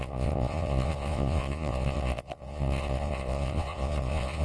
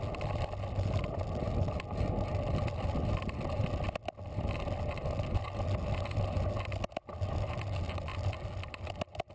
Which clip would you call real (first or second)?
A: second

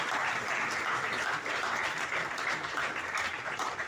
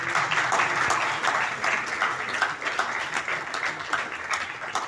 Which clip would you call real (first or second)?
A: second